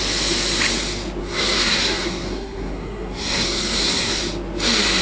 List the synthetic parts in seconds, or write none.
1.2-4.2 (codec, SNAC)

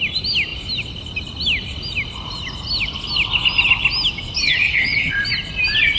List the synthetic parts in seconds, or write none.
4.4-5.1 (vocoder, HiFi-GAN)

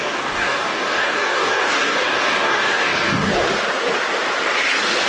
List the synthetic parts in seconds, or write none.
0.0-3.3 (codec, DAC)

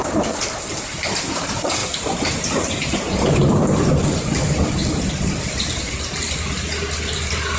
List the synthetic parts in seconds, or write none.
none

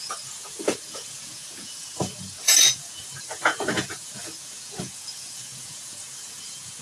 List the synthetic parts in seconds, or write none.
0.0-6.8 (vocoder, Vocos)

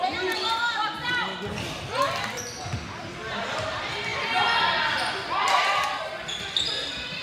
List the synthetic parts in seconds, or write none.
none

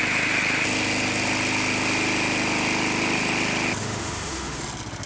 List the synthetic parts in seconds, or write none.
3.8-4.6 (autoencoder, DAC-VAE)

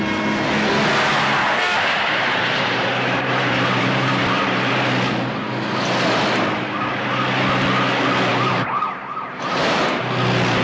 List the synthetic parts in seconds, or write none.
1.4-4.7 (vocoder, BigVGAN v2); 8.3-10.0